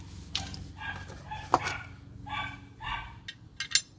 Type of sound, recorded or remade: recorded